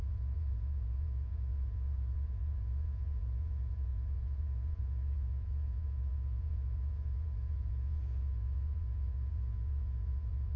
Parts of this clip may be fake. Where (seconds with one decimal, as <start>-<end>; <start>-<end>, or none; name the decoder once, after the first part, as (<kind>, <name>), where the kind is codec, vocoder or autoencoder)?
0.0-10.6 (vocoder, Vocos)